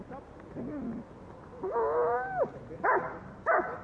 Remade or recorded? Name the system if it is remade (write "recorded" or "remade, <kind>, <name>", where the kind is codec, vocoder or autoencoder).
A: recorded